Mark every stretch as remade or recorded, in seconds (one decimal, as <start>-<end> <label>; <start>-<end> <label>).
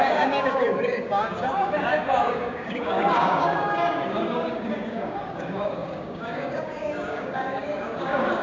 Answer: 0.0-8.4 remade